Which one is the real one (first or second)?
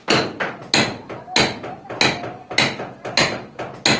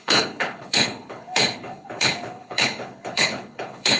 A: first